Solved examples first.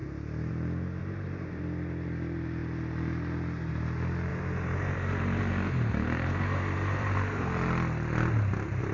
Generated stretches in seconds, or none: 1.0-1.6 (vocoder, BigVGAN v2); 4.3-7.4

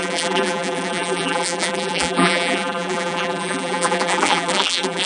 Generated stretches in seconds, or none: 0.0-5.1 (vocoder, BigVGAN v2)

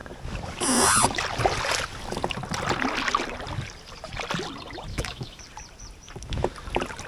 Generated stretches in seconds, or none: 4.9-5.4 (autoencoder, DAC-VAE)

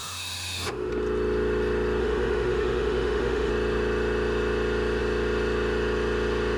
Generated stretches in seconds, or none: 0.0-0.9 (autoencoder, DAC-VAE); 2.0-3.5

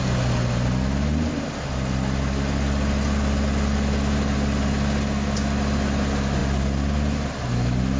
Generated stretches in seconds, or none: none

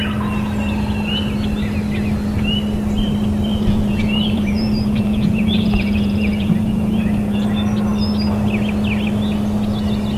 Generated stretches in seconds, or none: 3.5-7.4 (vocoder, Vocos)

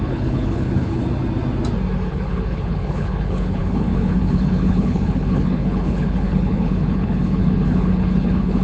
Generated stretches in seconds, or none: 0.0-1.0 (codec, HILCodec); 2.1-8.6

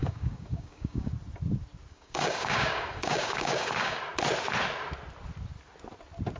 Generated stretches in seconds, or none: 0.0-1.1 (codec, DAC); 1.9-4.0